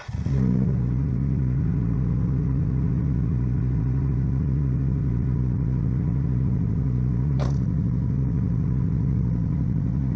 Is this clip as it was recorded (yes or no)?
no